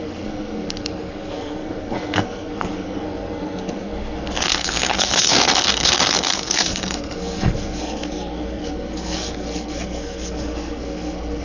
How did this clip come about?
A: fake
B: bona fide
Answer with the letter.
A